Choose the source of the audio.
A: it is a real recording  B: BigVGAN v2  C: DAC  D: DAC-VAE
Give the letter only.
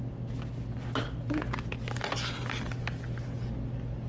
A